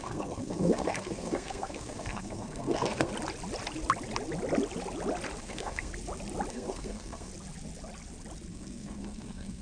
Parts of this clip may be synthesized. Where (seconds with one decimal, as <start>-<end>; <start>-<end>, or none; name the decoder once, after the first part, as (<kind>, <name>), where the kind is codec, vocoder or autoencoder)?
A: 0.0-3.1 (codec, SNAC); 5.4-5.9; 6.5-7.3; 8.5-9.6